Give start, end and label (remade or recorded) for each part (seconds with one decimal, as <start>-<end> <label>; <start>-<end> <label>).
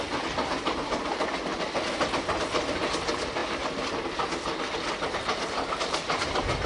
0.0-6.7 recorded